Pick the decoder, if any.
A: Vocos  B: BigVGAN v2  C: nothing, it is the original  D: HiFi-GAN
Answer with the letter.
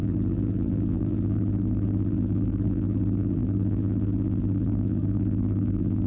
B